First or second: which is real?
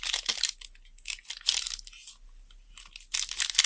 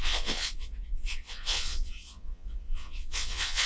first